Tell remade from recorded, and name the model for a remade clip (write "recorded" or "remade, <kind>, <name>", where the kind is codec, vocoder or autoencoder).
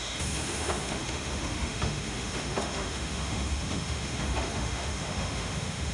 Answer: remade, autoencoder, DAC-VAE